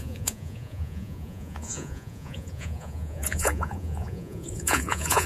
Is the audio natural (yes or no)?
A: no